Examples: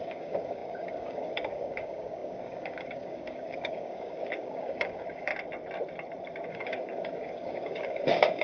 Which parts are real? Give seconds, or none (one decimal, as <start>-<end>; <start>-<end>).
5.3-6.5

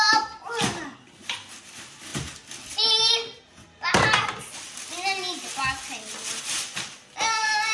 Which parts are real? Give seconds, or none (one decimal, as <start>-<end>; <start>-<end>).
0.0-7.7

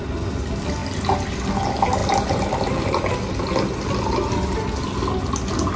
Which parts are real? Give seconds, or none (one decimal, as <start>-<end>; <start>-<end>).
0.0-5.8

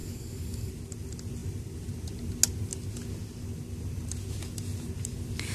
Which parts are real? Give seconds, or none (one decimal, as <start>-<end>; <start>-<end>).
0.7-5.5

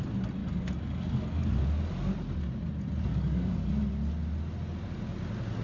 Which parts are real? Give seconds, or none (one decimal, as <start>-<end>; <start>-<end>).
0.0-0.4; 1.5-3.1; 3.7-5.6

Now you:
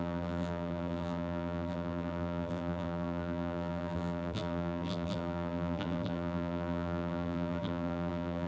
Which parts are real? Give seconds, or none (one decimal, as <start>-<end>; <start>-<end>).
none